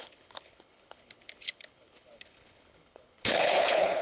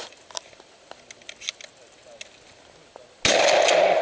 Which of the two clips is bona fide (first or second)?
second